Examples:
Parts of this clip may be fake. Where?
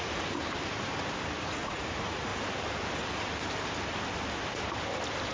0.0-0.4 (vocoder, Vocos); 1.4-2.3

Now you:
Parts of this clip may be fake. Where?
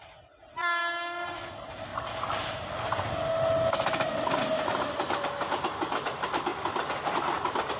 none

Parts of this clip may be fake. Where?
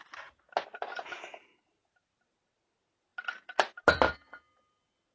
none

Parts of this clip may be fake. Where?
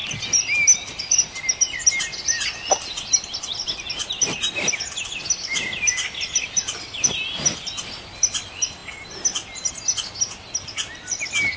none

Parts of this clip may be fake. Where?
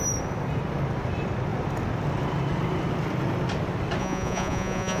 4.0-5.0 (vocoder, Vocos)